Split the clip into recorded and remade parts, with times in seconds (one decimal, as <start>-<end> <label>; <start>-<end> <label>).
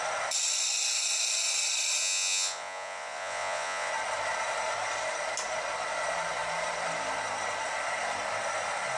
0.0-2.0 recorded; 2.0-3.9 remade; 3.9-9.0 recorded